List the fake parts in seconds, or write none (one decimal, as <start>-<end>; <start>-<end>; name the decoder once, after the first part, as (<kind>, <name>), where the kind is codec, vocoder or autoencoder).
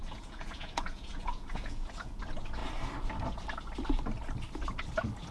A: 0.0-2.2 (vocoder, Vocos)